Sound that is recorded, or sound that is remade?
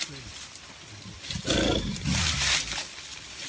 recorded